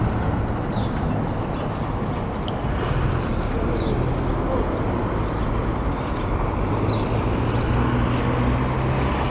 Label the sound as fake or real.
real